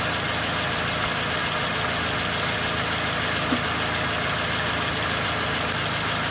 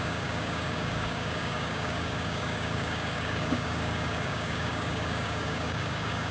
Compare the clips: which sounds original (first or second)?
first